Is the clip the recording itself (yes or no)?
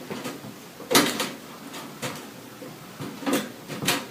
yes